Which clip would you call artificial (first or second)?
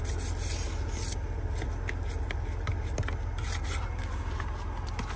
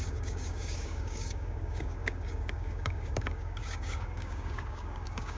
second